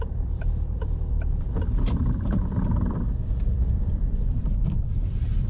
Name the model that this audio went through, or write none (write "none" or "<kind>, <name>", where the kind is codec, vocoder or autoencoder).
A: vocoder, BigVGAN v2